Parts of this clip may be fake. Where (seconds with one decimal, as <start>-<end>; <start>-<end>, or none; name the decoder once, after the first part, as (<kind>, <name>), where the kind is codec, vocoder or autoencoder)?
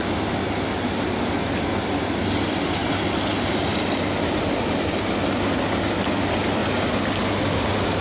none